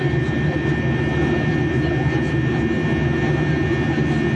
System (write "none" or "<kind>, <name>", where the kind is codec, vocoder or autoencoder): none